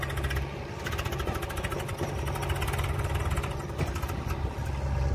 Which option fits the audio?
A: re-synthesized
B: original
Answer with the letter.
B